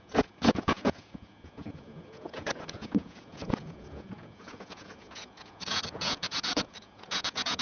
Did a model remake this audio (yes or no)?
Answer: yes